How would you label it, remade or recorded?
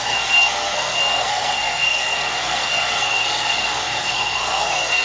remade